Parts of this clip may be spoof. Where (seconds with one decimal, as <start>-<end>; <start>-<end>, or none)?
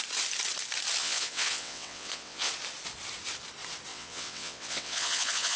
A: 1.0-2.5; 3.9-5.6